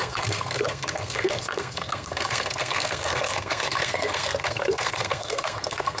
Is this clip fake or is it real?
fake